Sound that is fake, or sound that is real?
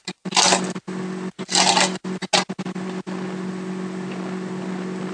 real